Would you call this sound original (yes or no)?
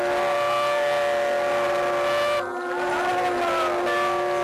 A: yes